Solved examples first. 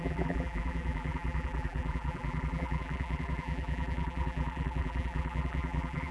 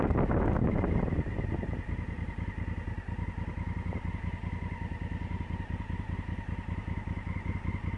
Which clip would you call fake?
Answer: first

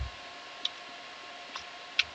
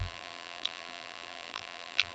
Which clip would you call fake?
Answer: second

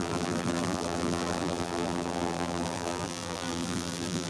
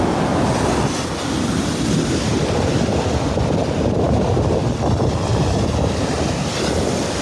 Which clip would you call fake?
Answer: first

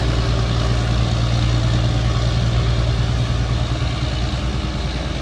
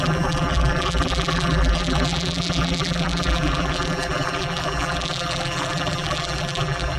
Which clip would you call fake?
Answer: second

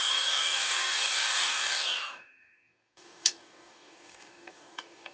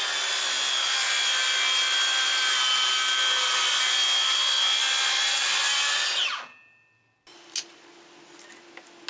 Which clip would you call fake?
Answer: first